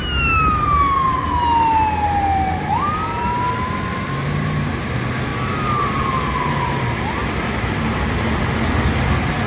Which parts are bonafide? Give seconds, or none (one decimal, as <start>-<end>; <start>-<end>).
0.0-5.3; 6.8-9.5